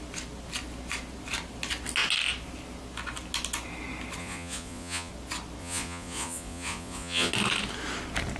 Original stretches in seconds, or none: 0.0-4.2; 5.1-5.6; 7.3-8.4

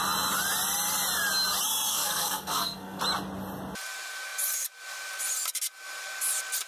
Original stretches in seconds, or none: 0.0-1.9; 3.0-6.7

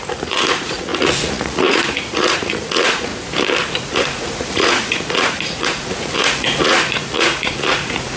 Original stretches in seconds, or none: 3.1-3.7

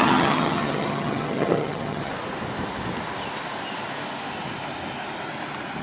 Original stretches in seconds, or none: 2.1-5.8

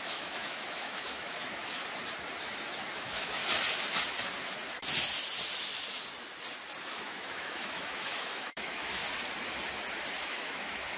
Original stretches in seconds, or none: 1.8-3.0; 3.4-6.8; 9.0-10.2

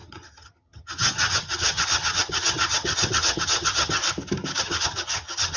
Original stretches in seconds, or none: 4.0-4.6

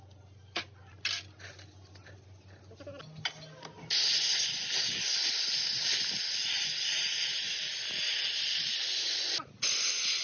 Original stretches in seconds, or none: 0.0-10.2